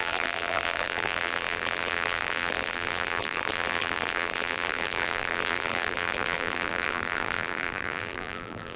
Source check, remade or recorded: remade